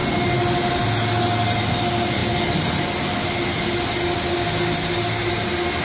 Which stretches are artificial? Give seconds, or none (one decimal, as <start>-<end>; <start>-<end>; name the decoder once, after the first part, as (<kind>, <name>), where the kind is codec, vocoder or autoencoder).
none